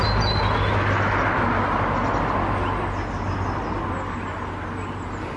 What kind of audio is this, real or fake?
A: real